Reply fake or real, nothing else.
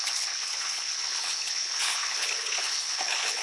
fake